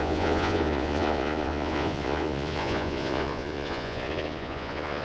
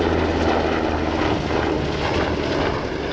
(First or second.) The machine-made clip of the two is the first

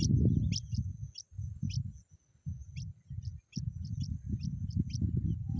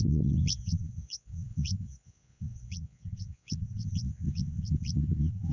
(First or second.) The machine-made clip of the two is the second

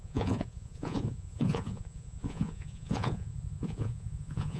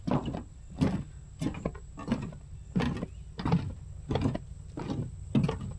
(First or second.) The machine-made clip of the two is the first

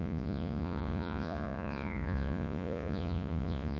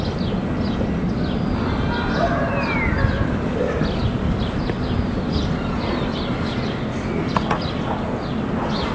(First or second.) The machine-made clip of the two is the first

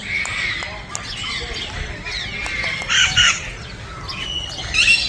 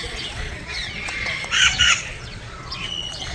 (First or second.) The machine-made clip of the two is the second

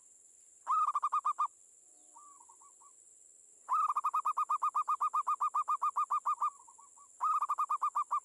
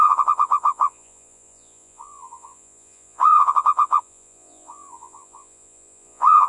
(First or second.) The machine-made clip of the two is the second